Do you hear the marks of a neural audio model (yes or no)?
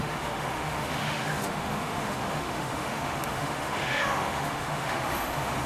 yes